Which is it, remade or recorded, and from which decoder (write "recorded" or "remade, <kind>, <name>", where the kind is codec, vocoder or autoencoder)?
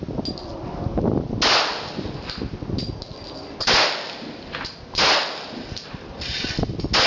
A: recorded